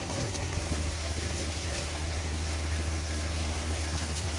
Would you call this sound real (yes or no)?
no